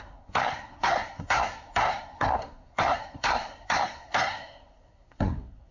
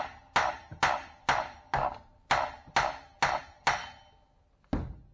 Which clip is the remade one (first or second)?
first